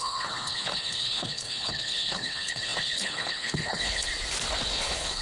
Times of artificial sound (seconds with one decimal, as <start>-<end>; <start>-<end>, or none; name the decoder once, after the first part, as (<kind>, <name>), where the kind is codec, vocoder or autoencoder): 0.0-4.1 (codec, HILCodec); 4.7-5.2